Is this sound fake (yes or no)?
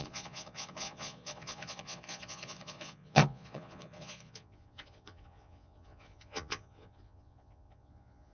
yes